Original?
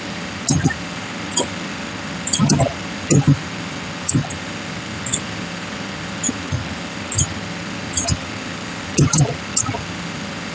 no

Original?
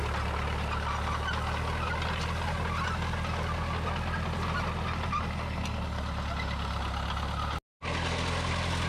yes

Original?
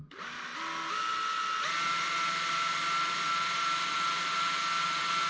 yes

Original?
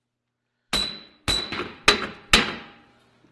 yes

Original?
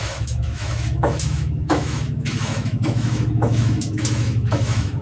no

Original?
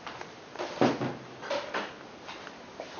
yes